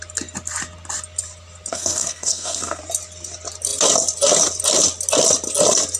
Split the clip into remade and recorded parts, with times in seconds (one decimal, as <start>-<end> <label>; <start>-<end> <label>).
0.0-1.7 recorded; 1.7-2.8 remade; 2.8-6.0 recorded